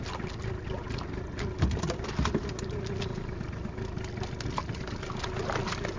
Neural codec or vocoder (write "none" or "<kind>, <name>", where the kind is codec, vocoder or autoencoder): none